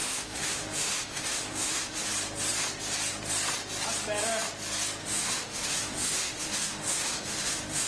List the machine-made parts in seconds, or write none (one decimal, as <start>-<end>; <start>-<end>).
0.0-2.1; 5.0-7.9